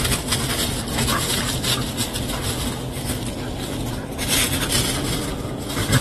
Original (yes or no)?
yes